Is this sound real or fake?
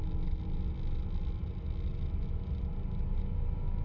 real